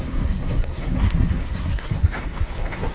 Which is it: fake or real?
fake